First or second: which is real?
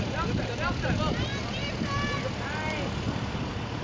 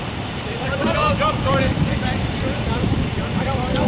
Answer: first